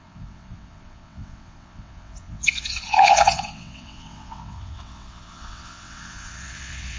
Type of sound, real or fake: fake